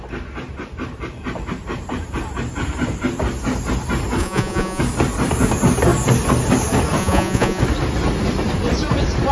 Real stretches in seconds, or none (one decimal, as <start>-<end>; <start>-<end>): 0.0-4.2; 4.8-7.0; 7.6-9.3